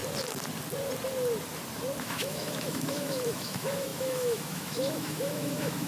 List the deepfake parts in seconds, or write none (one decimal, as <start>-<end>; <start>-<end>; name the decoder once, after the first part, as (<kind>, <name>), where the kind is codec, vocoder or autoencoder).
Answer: 2.0-5.9 (autoencoder, DAC-VAE)